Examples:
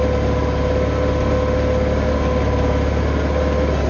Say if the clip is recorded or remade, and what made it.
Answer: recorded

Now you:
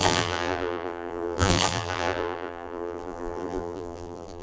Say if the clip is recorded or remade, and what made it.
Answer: remade, vocoder, BigVGAN v2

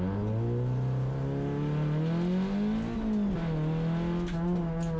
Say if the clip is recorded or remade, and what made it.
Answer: recorded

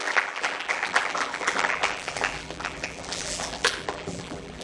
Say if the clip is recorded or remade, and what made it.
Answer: remade, vocoder, BigVGAN v2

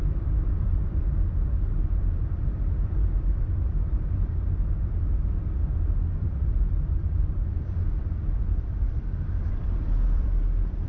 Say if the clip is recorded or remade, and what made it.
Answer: remade, vocoder, BigVGAN v2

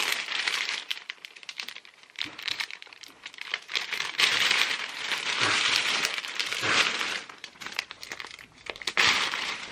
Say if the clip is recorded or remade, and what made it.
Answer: remade, vocoder, BigVGAN v2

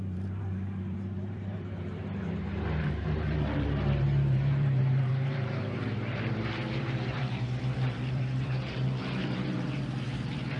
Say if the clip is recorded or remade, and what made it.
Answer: remade, vocoder, BigVGAN v2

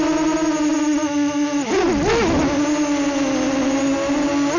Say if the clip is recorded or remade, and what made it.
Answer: recorded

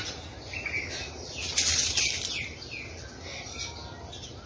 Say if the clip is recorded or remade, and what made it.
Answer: recorded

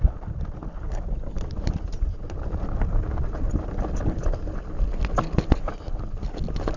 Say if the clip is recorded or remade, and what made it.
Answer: recorded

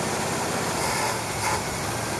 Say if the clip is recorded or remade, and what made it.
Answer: remade, vocoder, BigVGAN v2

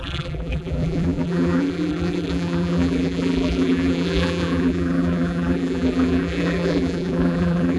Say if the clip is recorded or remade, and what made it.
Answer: remade, vocoder, BigVGAN v2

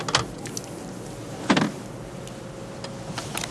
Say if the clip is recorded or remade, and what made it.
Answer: recorded